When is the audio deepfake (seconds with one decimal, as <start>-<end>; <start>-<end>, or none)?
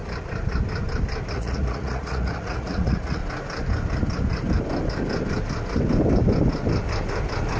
1.3-3.2